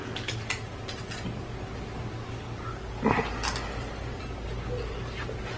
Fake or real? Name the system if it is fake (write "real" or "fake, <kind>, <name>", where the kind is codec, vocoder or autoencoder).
real